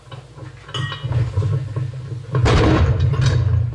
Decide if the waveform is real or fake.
real